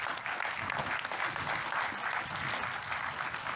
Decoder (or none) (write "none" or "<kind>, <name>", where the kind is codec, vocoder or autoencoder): none